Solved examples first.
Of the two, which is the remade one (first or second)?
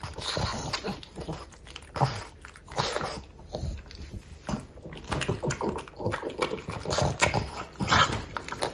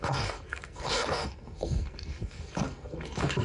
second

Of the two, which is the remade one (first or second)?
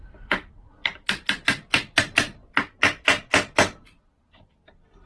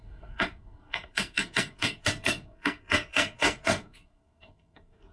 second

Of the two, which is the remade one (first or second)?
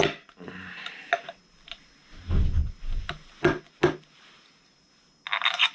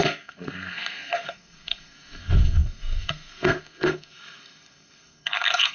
second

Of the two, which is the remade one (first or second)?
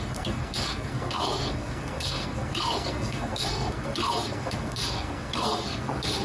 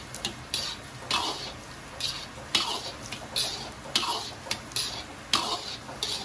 first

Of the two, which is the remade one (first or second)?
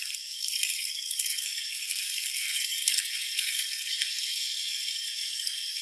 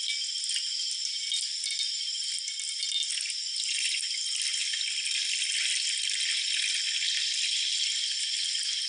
first